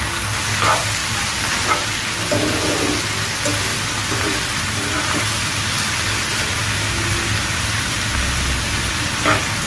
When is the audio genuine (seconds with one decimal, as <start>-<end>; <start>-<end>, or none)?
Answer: 0.0-1.0; 1.7-3.7; 5.2-9.7